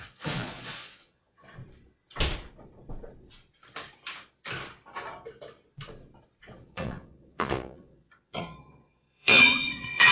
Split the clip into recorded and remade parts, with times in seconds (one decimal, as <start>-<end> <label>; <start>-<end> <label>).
0.0-1.6 remade; 1.6-6.4 recorded; 6.4-10.1 remade